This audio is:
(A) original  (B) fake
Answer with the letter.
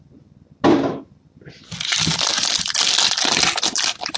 A